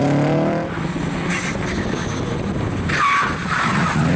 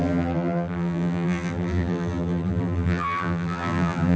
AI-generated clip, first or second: second